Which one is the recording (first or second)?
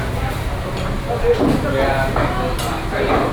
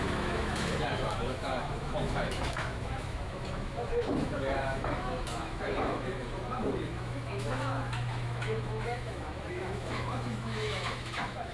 first